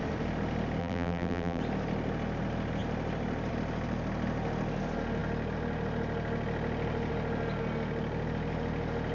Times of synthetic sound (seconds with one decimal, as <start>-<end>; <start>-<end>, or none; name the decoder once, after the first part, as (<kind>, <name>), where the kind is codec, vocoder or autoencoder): 0.8-1.6 (vocoder, BigVGAN v2)